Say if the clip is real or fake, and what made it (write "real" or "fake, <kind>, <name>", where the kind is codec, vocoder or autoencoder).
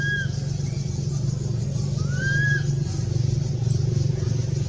real